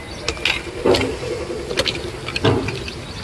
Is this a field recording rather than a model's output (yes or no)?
yes